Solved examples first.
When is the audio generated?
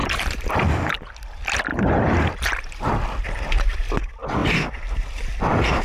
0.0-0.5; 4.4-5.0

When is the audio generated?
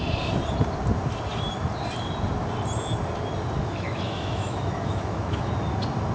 3.6-5.5